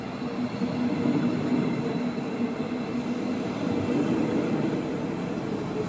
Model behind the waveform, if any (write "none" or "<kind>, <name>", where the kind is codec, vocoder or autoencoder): none